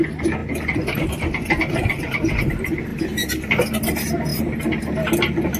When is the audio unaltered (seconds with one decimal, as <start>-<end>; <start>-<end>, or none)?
0.0-4.3; 4.8-5.6